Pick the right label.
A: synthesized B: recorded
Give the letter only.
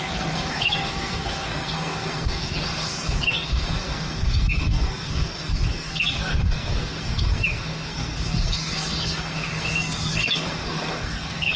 A